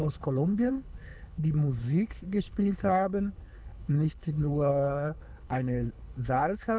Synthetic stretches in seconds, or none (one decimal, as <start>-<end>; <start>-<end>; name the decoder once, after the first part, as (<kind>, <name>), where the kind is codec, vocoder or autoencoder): 0.0-6.8 (codec, HILCodec)